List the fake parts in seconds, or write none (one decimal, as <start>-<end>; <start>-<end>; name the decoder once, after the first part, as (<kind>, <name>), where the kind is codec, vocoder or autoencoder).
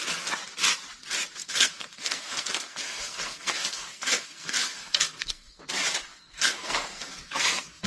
1.4-5.6 (codec, SNAC); 6.1-7.9